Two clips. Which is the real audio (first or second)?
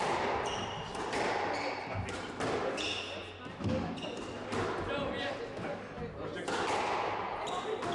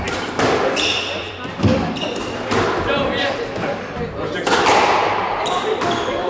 first